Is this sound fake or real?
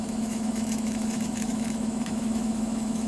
fake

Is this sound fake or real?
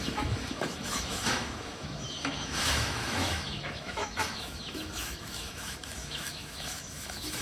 fake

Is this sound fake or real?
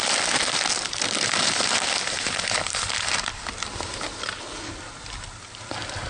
real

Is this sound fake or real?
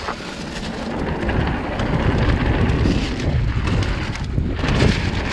real